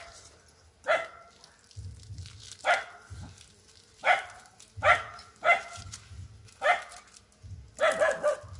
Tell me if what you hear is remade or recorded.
recorded